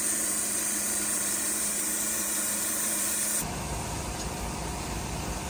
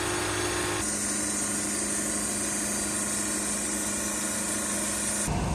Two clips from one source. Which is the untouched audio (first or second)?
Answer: second